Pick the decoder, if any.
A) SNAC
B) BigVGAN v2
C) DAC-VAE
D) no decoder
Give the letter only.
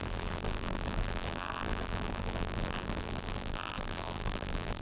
B